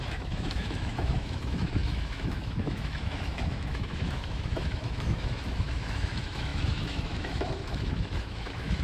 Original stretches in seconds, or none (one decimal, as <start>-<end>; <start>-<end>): none